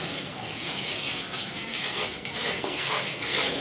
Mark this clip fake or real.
fake